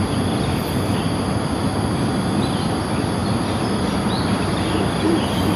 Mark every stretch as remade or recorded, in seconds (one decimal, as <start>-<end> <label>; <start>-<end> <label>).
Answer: 0.0-3.2 recorded; 3.2-4.7 remade; 4.7-5.6 recorded